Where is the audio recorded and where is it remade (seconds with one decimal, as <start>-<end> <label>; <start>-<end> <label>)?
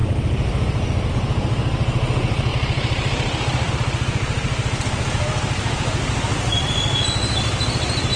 0.0-2.5 recorded; 2.5-3.7 remade; 3.7-8.2 recorded